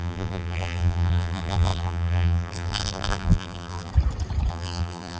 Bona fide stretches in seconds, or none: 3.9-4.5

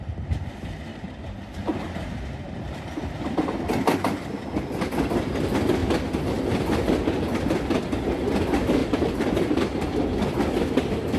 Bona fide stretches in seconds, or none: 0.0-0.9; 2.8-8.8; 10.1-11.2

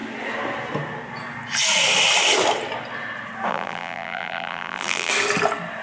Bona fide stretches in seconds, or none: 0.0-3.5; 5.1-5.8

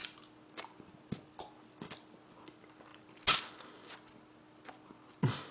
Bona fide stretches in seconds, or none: 0.0-5.5

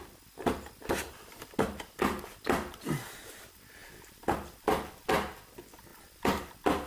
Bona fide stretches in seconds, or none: 0.0-3.8; 5.1-5.9; 6.5-6.9